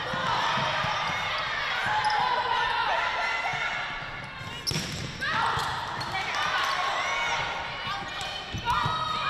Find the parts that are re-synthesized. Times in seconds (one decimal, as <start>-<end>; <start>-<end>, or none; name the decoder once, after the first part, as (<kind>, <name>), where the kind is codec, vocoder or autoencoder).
5.0-6.9 (vocoder, BigVGAN v2)